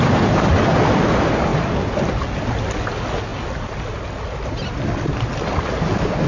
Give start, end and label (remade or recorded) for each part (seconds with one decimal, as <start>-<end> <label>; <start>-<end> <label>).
0.0-0.5 recorded; 0.5-1.1 remade; 1.1-6.3 recorded